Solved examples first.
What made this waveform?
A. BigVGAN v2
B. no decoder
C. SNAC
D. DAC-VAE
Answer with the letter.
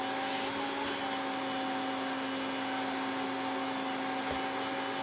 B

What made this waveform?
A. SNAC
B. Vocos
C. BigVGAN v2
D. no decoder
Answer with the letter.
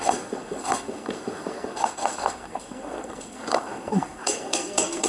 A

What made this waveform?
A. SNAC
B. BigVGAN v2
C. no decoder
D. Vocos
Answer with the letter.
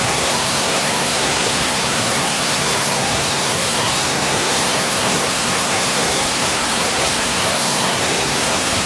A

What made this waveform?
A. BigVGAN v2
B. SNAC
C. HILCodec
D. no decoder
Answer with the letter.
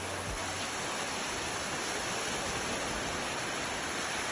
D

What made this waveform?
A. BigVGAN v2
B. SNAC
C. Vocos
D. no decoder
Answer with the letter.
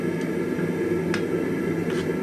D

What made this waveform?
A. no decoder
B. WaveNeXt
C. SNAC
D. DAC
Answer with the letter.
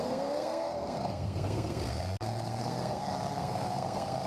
C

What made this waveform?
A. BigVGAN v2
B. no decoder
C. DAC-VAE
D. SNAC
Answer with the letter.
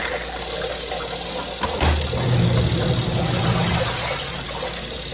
B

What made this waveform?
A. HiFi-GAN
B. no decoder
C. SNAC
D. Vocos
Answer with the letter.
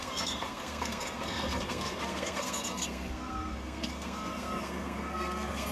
C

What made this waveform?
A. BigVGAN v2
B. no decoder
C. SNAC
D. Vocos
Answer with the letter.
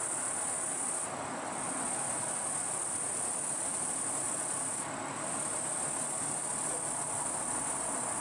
B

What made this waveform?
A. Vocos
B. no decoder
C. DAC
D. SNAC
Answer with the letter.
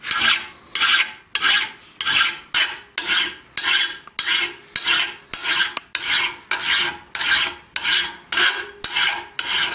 B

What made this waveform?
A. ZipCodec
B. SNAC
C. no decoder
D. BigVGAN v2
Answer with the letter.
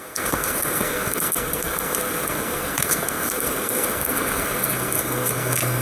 B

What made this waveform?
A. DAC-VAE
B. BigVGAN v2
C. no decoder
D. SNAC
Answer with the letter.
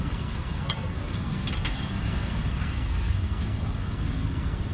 D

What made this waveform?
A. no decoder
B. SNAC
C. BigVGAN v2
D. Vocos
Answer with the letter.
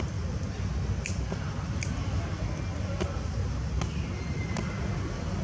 A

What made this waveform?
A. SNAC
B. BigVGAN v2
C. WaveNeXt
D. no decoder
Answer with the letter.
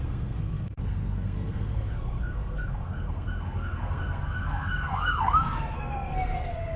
A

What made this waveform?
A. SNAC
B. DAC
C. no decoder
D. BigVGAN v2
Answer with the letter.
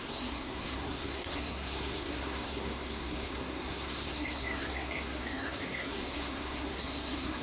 A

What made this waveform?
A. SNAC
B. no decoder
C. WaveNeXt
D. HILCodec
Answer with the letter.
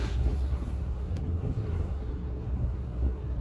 A